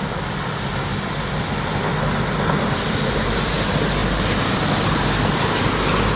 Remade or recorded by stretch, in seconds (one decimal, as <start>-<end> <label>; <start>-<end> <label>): 0.0-6.2 recorded